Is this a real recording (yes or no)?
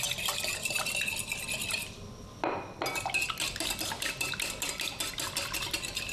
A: yes